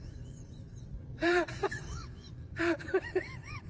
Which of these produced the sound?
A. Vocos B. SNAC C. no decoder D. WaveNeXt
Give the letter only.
A